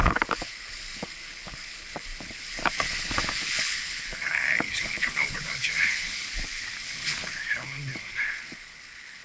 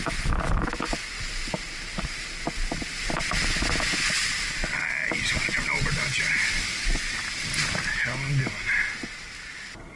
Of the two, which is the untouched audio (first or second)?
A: second